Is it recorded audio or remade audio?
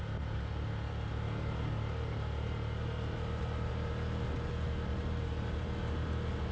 recorded